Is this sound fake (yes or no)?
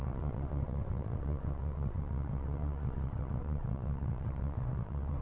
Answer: yes